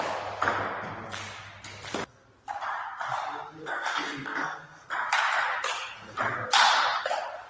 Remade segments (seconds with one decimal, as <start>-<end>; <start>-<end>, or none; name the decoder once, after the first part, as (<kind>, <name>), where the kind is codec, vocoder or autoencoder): 3.6-4.9 (codec, SNAC)